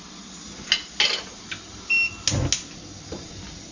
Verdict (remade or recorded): recorded